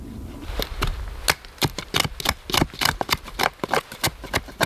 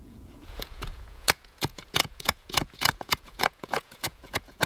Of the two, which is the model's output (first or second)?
second